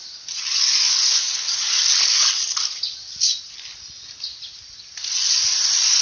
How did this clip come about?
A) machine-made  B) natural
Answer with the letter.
B